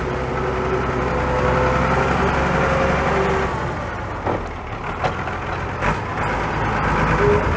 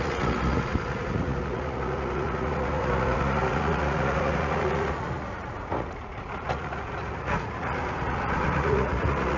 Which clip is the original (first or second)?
first